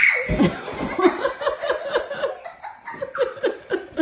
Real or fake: fake